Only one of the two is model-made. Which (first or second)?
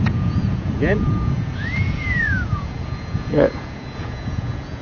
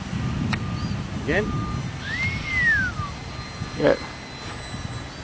first